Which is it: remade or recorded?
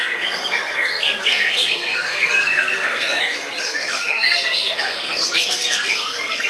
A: remade